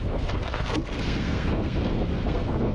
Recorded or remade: remade